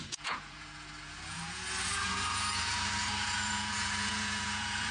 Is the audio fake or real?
fake